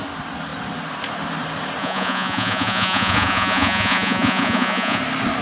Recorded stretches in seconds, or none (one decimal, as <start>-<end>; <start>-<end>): 0.0-1.8; 5.0-5.4